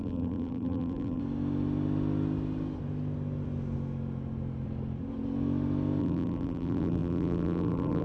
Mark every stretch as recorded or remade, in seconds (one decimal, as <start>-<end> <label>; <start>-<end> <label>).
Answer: 0.0-1.2 remade; 1.2-6.0 recorded; 6.0-8.0 remade